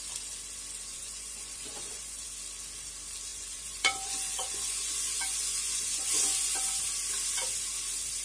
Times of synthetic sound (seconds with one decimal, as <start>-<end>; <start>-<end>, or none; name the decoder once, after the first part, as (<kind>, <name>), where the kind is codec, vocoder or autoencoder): 0.9-2.3 (vocoder, Vocos); 3.3-6.8